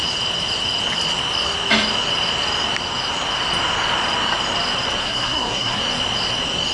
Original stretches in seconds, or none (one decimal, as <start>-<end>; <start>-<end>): 0.0-5.0; 5.8-6.7